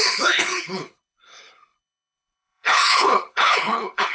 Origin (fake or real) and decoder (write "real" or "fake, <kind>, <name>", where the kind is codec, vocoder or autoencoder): fake, codec, HILCodec